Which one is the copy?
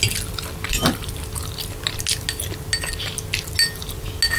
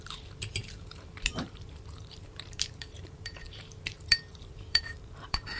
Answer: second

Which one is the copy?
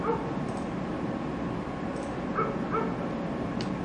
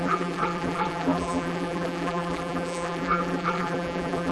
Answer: second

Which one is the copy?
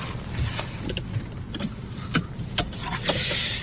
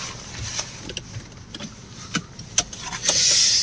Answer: first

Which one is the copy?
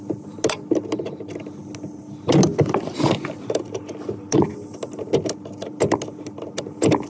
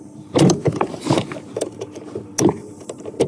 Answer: second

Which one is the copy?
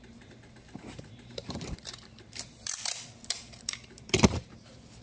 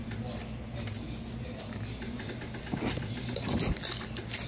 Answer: first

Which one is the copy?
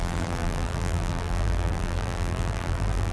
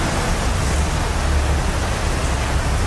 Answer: first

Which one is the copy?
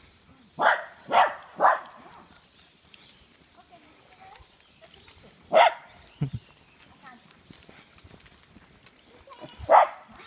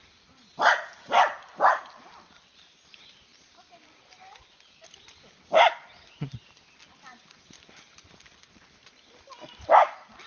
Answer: first